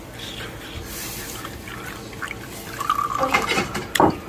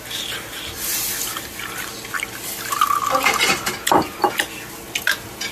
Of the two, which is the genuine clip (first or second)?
second